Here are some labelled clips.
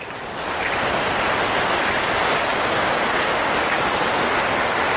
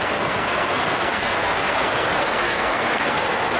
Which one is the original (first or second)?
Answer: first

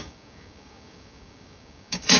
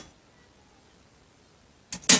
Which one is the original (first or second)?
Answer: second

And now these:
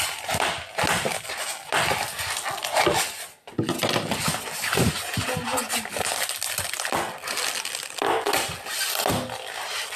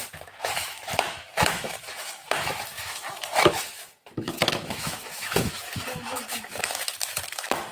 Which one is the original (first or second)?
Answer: first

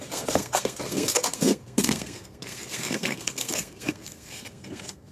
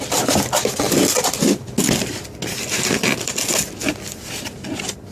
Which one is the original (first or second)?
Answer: second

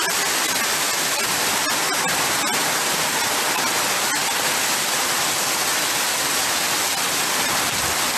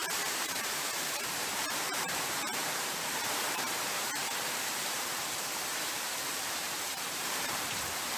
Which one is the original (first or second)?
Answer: first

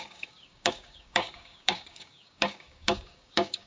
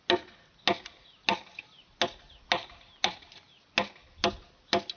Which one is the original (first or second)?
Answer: second